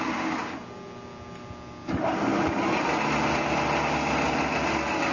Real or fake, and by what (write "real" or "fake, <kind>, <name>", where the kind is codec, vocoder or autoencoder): real